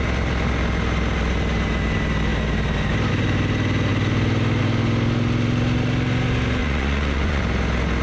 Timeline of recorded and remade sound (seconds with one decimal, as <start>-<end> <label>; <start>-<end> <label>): 0.0-6.6 recorded; 6.6-7.4 remade; 7.4-8.0 recorded